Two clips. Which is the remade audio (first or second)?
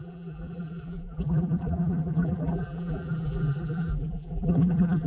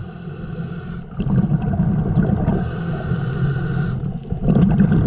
first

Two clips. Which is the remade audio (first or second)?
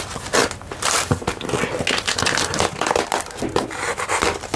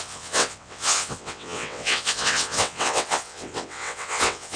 second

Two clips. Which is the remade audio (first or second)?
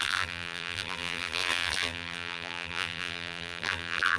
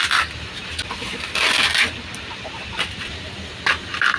first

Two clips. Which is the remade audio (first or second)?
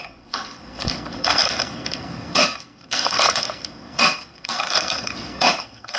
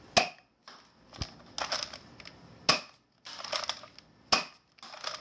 first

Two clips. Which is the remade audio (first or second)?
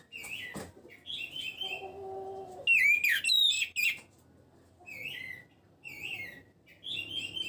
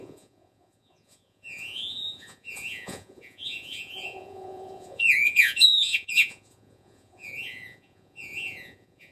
second